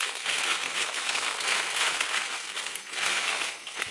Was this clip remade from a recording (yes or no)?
yes